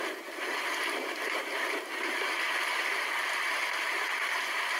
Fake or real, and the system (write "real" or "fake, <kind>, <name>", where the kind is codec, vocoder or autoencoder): real